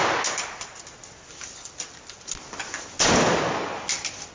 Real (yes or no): yes